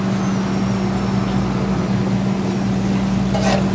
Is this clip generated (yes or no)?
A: no